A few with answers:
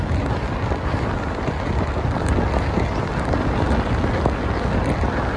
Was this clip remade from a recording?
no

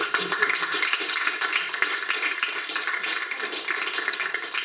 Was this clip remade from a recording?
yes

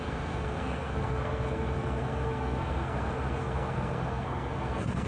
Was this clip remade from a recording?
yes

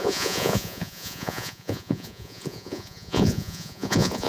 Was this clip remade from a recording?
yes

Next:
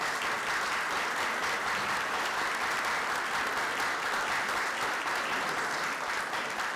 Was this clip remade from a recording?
no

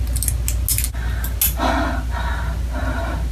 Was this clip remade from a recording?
no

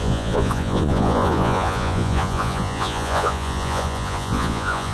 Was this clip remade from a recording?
yes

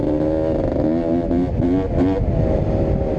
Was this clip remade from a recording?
no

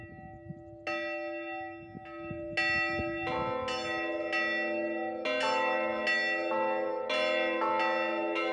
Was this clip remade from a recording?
no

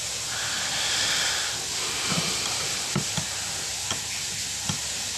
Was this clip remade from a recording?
no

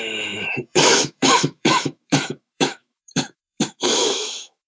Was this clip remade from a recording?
yes